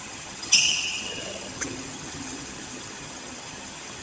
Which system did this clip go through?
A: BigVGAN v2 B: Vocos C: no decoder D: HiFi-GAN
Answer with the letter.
D